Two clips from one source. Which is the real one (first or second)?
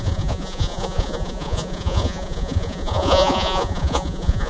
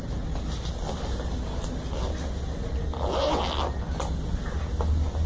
second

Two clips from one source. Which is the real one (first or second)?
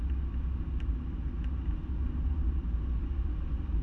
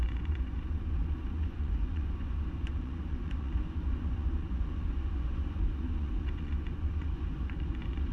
first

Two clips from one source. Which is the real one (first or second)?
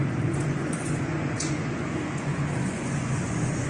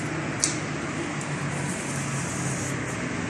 second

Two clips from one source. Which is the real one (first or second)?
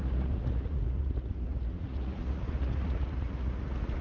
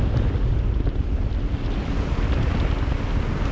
second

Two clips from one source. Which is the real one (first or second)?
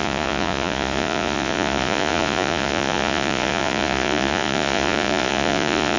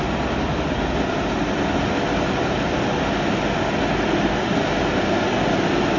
second